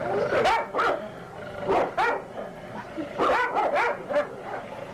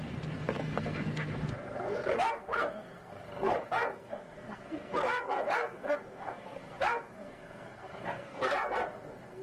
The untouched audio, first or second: first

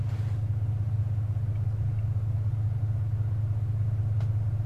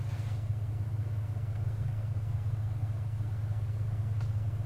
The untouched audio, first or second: first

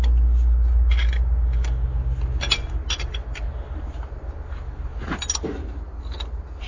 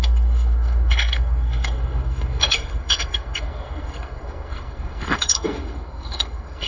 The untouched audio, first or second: first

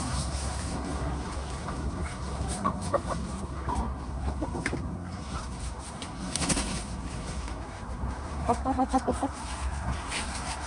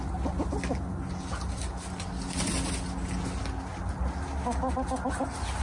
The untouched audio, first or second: second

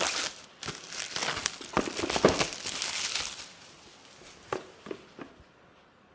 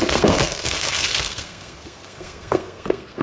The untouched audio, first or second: first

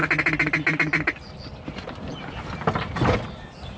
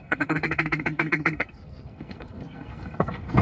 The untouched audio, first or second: first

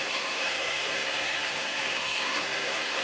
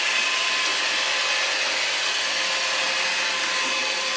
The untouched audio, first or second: second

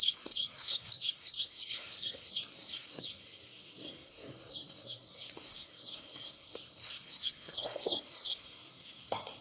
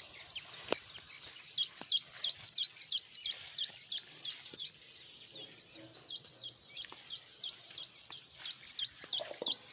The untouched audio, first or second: second